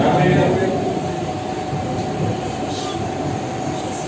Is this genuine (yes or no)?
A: no